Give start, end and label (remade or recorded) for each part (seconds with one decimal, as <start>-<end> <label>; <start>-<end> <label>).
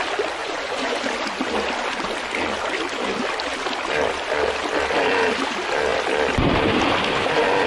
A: 0.0-0.4 recorded; 0.4-1.0 remade; 1.0-7.7 recorded